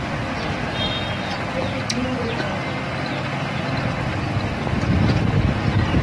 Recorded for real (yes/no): yes